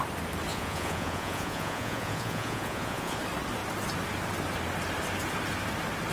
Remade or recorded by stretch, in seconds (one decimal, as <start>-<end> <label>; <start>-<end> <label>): 0.0-0.5 recorded; 0.5-3.2 remade; 3.2-6.1 recorded